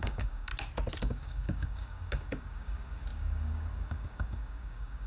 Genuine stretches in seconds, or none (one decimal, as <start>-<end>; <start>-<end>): 0.5-1.0